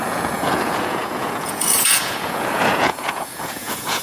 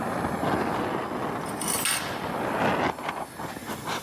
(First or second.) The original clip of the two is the second